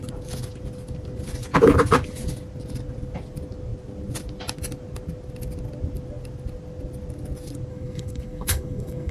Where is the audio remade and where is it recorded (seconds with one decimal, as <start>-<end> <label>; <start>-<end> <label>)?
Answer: 0.0-7.7 recorded; 7.7-9.1 remade